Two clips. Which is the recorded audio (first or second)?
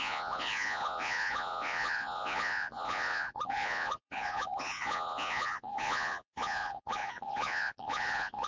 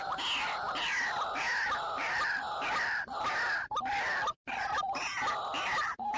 second